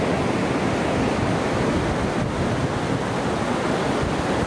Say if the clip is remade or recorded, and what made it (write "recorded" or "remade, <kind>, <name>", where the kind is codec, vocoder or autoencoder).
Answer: recorded